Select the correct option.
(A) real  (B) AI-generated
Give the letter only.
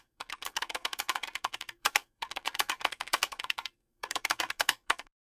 B